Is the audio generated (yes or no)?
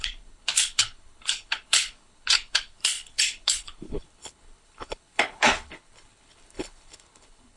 yes